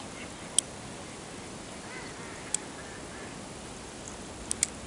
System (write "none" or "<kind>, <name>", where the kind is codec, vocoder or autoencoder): none